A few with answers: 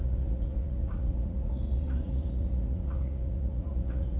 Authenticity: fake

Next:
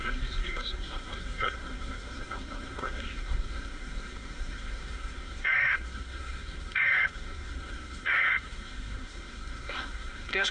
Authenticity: fake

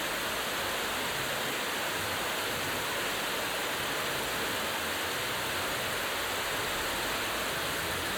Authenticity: real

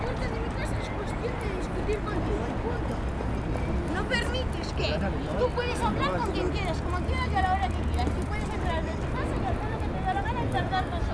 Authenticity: real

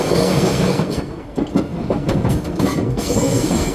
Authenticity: fake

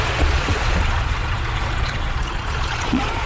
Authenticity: fake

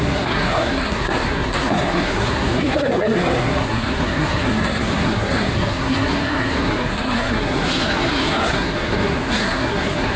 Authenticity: fake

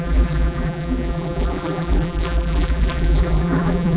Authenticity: fake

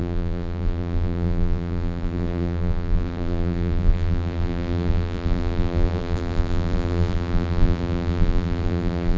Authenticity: fake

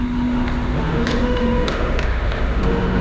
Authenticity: fake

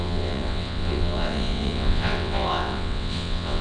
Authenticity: fake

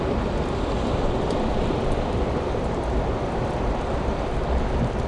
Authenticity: real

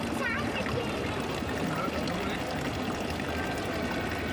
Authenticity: real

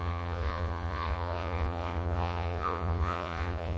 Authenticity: fake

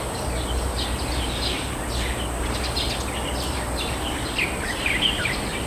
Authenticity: real